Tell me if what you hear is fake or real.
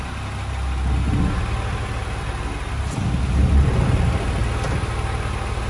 real